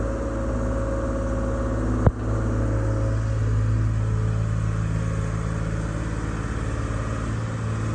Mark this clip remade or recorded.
recorded